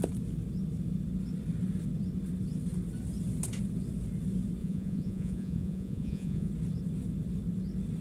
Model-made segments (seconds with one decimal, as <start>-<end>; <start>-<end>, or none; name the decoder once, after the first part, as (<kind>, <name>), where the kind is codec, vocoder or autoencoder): 4.6-6.5 (vocoder, Vocos)